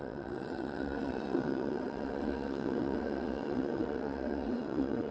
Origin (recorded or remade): remade